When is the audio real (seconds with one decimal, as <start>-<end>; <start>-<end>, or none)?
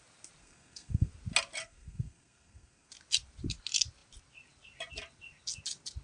0.0-0.4; 1.1-1.6; 2.9-6.0